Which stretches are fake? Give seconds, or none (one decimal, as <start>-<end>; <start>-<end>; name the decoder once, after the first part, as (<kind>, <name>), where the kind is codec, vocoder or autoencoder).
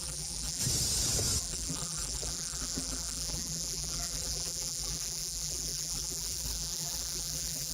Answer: 0.0-0.6 (vocoder, BigVGAN v2); 1.4-7.7